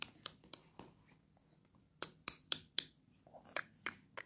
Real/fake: real